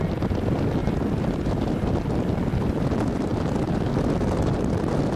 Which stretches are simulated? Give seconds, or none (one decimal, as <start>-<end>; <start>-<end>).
0.8-1.5